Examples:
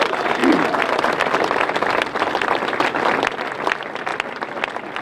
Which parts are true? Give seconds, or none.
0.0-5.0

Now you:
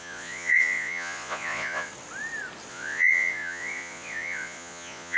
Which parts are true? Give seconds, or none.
1.9-2.7

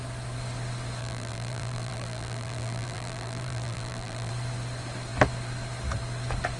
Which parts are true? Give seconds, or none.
0.0-1.0; 4.3-6.6

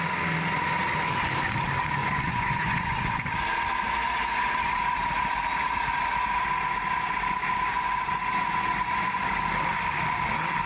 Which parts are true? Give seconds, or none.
0.0-2.0; 3.3-7.7; 9.2-10.7

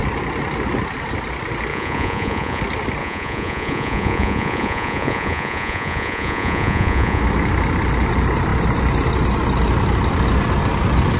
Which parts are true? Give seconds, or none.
0.0-1.7; 2.6-3.0; 7.2-11.2

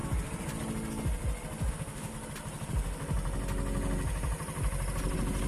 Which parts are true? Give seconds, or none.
0.0-1.7; 2.1-5.5